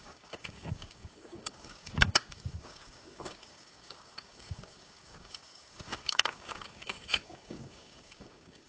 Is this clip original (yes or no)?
no